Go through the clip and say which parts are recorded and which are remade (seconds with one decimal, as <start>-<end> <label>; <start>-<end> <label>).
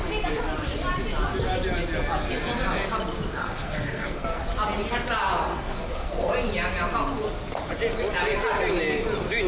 0.0-3.4 recorded; 3.4-4.4 remade; 4.4-5.5 recorded; 5.5-6.3 remade; 6.3-9.5 recorded